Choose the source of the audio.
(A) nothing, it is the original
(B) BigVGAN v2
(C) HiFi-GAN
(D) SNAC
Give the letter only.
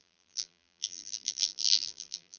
B